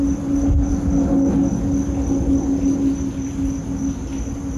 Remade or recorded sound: recorded